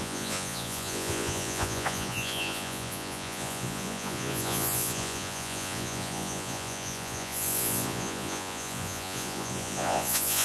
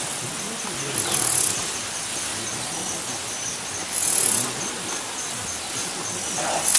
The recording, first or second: second